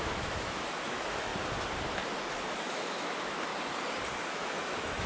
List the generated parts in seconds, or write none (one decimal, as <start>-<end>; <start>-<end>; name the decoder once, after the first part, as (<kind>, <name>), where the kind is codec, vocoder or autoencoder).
0.0-1.3 (autoencoder, DAC-VAE); 2.5-3.5; 4.3-5.1